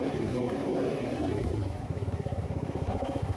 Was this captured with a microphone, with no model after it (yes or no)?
no